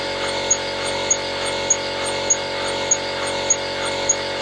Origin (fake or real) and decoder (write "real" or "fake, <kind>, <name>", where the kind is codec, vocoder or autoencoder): real